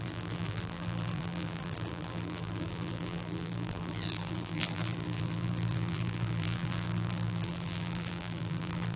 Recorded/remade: remade